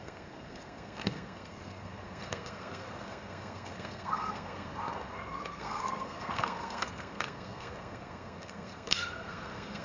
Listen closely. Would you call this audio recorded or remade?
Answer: remade